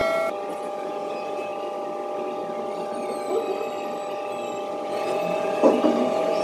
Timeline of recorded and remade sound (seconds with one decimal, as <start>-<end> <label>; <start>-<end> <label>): 0.0-0.5 recorded; 0.5-1.5 remade; 1.5-4.7 recorded; 4.7-6.4 remade